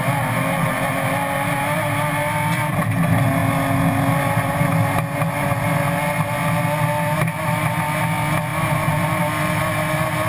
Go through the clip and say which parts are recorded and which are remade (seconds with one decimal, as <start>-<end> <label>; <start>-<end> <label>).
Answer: 0.0-10.3 recorded